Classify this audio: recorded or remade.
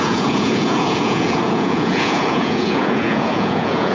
remade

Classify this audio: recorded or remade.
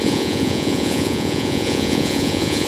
remade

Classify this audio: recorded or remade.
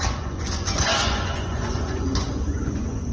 remade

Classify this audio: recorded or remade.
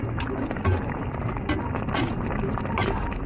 recorded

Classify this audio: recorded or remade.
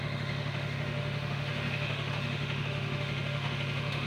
remade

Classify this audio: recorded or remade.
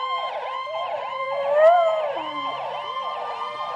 recorded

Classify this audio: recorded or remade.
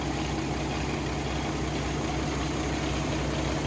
recorded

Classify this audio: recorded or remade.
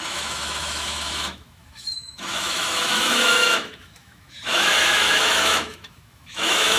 remade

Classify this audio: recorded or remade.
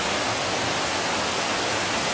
recorded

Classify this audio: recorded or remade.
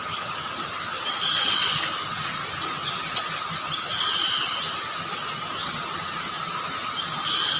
recorded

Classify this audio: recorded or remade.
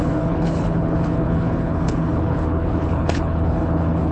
remade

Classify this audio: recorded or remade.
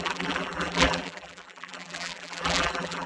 remade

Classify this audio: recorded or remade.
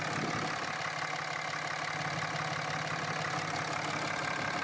recorded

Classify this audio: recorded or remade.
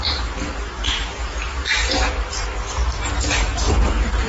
remade